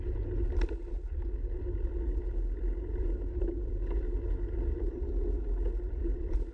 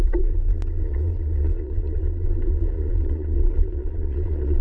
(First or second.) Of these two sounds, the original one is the first